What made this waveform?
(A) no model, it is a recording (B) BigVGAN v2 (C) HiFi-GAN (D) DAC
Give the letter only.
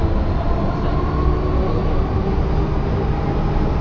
A